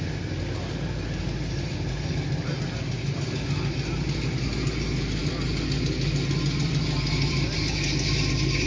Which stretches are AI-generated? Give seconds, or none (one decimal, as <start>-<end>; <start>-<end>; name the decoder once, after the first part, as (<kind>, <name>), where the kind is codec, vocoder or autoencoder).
none